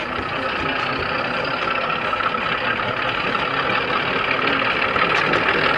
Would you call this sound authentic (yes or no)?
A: yes